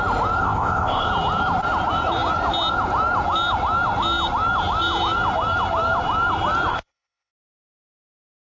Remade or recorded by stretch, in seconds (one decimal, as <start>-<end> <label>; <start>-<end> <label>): 0.0-0.4 recorded; 0.4-1.1 remade; 1.1-6.7 recorded; 6.7-7.3 remade; 7.3-8.4 recorded